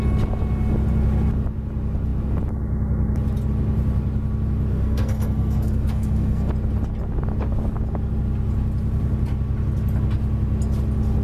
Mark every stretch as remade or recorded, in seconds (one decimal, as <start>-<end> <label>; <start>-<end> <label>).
0.0-4.7 recorded; 4.7-6.5 remade; 6.5-11.2 recorded